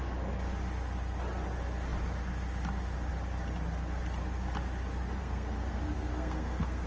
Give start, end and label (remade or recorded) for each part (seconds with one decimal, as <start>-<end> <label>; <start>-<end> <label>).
0.0-5.2 recorded; 5.2-6.9 remade